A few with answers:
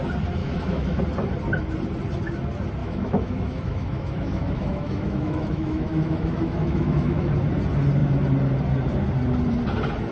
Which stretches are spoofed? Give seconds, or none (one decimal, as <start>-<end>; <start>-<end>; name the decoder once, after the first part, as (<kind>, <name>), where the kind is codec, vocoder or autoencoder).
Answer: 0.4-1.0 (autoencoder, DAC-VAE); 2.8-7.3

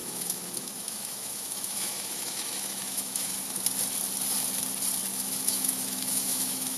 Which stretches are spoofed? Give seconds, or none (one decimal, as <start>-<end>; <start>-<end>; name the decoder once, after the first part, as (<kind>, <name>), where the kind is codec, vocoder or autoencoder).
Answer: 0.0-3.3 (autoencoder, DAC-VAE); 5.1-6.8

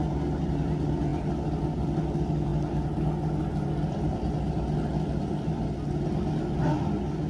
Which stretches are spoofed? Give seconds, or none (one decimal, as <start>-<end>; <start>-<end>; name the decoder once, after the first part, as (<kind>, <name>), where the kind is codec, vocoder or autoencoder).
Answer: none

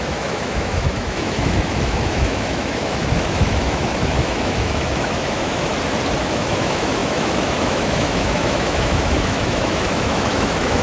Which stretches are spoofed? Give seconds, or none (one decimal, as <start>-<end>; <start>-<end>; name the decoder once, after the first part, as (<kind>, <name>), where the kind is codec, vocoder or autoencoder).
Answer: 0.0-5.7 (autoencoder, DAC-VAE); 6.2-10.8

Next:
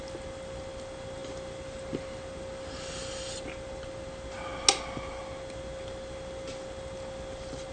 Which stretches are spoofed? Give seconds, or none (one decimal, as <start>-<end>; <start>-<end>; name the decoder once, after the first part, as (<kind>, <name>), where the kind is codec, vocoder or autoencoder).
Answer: none

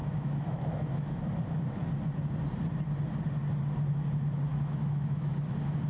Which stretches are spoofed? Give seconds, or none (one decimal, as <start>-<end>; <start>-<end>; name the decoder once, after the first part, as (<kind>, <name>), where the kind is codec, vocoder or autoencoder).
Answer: 0.0-1.2 (autoencoder, DAC-VAE); 4.5-5.3